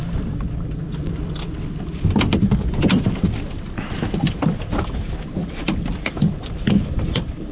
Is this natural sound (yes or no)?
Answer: yes